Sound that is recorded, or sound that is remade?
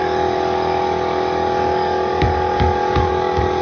remade